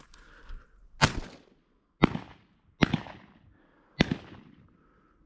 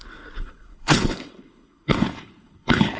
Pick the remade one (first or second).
second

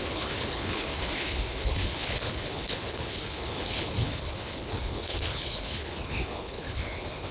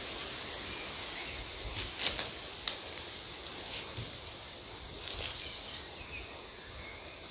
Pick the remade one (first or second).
first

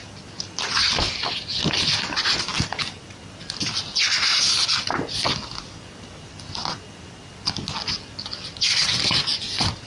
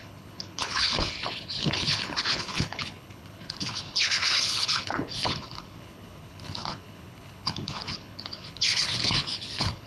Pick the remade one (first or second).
second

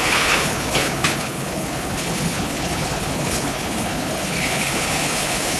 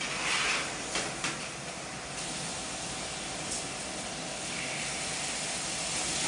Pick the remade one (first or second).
first